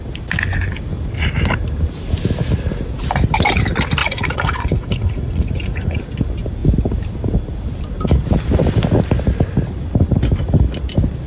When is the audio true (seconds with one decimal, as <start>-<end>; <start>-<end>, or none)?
0.0-4.0; 6.0-11.3